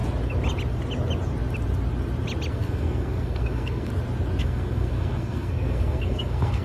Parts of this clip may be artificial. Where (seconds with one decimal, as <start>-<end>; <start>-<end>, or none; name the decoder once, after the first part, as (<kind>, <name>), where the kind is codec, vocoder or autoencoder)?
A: 2.5-3.9 (codec, SNAC); 4.4-6.6